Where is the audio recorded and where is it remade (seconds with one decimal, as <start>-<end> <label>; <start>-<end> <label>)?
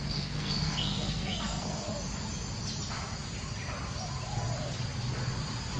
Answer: 0.0-1.9 remade; 1.9-5.8 recorded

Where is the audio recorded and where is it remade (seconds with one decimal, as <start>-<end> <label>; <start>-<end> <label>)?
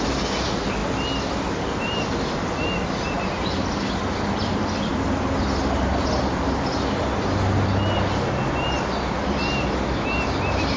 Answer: 0.0-10.8 recorded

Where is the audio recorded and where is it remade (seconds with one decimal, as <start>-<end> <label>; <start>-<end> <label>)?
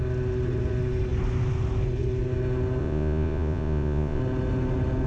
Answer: 0.0-2.8 recorded; 2.8-4.2 remade; 4.2-5.1 recorded